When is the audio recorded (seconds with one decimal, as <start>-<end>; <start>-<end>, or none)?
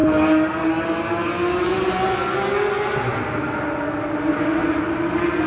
0.0-5.5